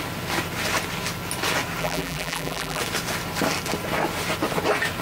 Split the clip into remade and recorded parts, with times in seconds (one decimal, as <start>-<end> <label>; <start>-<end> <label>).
0.0-1.8 recorded; 1.8-2.8 remade; 2.8-5.0 recorded